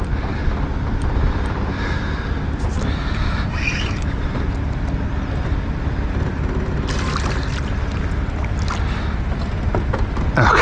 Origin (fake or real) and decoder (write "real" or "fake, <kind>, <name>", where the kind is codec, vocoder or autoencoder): real